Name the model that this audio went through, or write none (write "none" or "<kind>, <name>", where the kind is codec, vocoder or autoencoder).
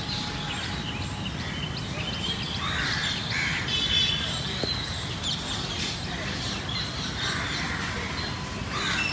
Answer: none